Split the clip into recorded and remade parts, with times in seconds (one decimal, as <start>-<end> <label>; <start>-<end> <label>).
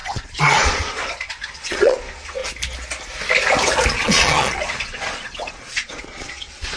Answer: 0.0-2.4 remade; 2.4-3.9 recorded; 3.9-6.8 remade